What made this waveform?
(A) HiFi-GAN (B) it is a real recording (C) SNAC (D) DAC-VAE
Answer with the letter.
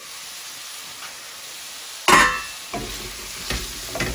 B